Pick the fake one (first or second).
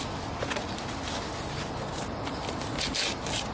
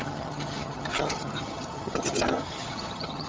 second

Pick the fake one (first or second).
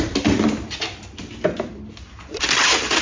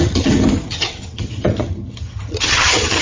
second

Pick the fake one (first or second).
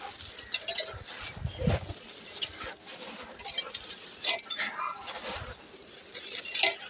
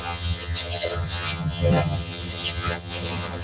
second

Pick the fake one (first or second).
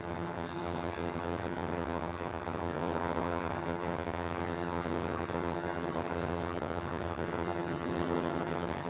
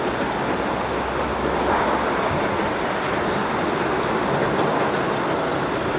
first